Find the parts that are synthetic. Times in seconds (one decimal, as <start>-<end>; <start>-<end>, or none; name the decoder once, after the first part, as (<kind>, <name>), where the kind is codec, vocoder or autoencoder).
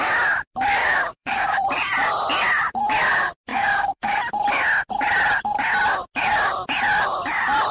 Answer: 0.8-1.6 (codec, DAC); 3.5-4.2